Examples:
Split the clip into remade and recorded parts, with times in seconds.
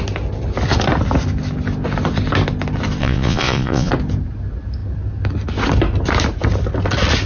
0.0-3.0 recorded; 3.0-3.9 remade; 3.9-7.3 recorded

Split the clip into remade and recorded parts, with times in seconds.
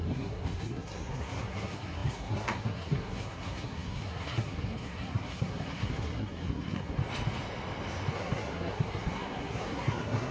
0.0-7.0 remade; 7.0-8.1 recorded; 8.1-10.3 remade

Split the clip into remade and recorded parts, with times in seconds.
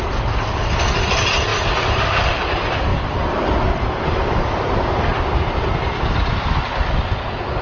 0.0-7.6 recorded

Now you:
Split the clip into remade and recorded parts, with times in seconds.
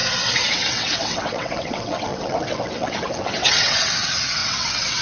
0.0-5.0 remade